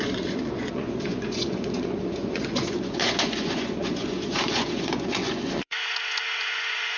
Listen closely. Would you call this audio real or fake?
fake